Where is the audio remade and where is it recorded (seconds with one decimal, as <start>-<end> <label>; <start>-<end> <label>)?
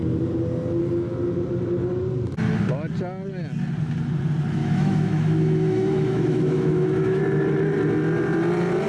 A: 0.0-4.6 recorded; 4.6-7.2 remade; 7.2-8.9 recorded